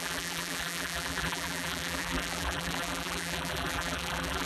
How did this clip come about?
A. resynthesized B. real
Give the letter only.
A